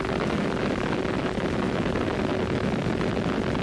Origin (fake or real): real